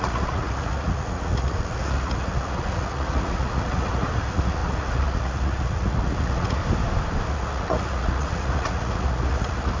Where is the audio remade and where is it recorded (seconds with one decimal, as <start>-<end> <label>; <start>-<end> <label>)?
0.0-6.6 remade; 6.6-7.3 recorded; 7.3-9.8 remade